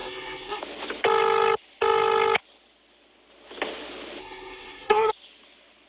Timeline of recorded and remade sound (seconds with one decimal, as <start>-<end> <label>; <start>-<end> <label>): 0.0-0.6 remade; 0.6-4.2 recorded; 4.2-5.1 remade; 5.1-5.9 recorded